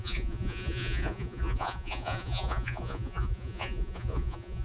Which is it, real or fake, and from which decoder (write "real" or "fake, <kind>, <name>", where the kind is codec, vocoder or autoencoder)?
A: fake, vocoder, Vocos